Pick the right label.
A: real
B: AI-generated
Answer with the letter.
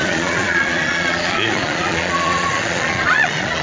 B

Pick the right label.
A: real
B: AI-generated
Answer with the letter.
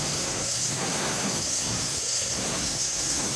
B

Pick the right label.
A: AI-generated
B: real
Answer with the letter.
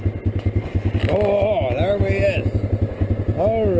B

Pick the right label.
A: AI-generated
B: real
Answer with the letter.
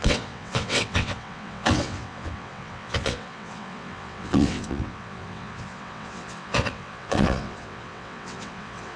A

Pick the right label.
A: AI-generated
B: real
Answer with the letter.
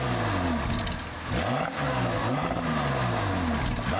B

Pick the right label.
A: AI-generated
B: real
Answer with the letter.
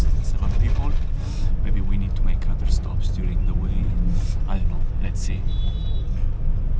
B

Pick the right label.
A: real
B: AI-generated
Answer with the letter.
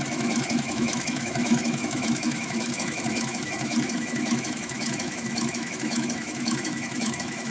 B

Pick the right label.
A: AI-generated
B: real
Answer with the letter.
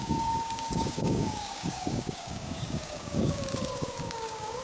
A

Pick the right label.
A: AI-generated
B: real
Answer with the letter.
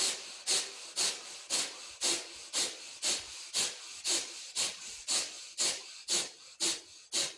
B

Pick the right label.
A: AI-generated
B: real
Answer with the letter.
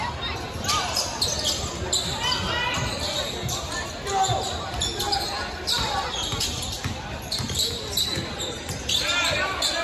B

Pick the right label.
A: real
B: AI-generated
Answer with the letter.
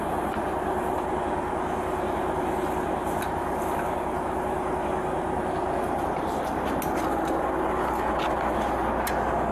A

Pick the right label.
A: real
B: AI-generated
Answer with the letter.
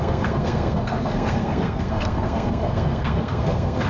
B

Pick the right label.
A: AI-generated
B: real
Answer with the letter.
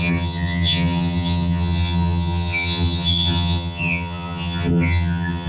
A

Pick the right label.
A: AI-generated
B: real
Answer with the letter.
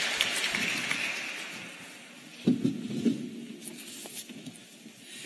B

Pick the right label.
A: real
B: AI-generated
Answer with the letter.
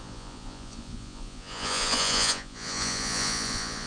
B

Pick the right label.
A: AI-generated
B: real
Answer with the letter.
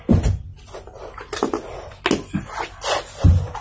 B